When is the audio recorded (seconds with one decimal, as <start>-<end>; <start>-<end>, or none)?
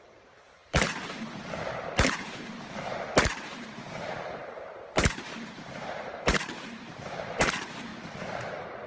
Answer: 2.4-3.2; 7.9-8.9